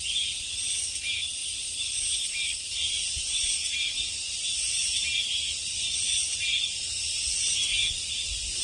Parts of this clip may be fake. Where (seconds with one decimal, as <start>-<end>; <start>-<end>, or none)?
none